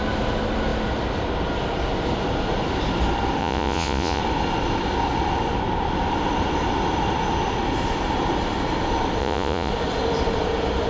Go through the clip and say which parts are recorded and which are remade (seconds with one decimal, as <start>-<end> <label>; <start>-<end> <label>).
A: 0.0-3.4 recorded; 3.4-4.2 remade; 4.2-9.2 recorded; 9.2-9.7 remade; 9.7-10.9 recorded